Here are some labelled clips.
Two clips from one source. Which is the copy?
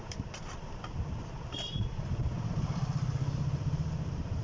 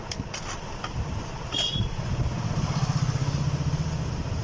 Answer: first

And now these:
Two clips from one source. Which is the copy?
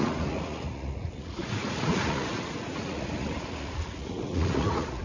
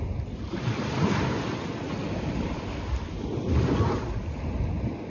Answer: first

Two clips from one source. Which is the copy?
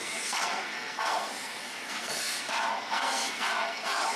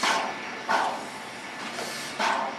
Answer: first